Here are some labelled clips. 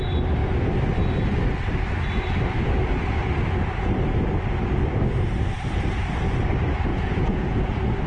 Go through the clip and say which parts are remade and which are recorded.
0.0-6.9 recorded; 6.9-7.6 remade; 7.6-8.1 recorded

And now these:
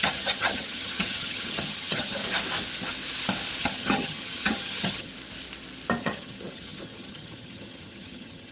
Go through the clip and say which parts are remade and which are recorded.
0.0-2.2 remade; 2.2-3.6 recorded; 3.6-5.1 remade; 5.1-6.0 recorded; 6.0-8.5 remade